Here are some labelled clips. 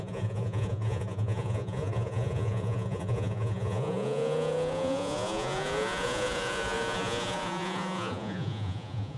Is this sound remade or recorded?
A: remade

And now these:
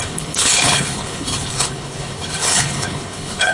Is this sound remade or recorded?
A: remade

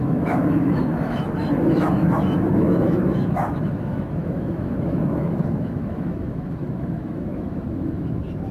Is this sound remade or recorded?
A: remade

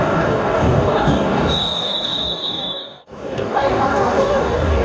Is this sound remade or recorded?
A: remade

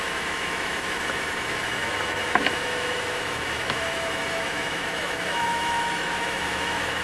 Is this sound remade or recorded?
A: remade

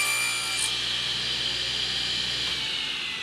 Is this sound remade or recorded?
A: recorded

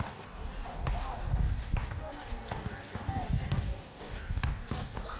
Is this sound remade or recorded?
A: remade